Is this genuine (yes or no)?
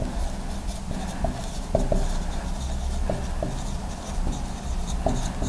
yes